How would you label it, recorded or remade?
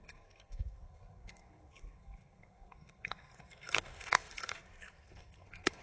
remade